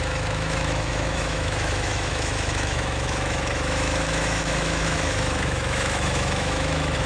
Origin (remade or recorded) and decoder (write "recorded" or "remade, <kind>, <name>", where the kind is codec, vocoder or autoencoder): remade, autoencoder, DAC-VAE